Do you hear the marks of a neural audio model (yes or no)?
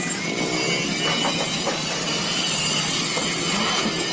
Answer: no